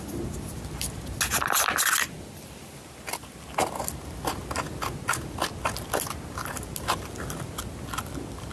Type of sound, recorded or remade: recorded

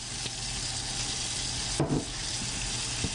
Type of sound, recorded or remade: recorded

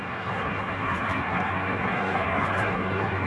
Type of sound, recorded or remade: remade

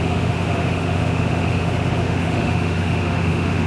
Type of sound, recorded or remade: remade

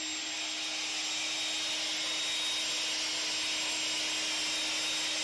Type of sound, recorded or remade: recorded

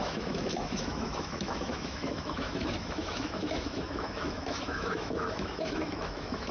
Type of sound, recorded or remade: remade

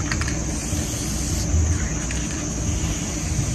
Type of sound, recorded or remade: recorded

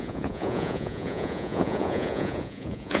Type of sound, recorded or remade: remade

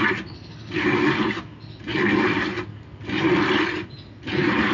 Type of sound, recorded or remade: recorded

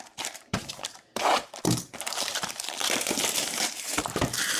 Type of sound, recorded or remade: remade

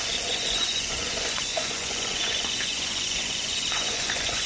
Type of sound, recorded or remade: remade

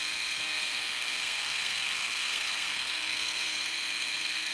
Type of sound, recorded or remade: remade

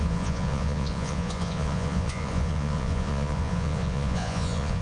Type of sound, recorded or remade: remade